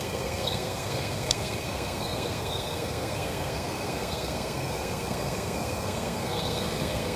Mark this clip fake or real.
fake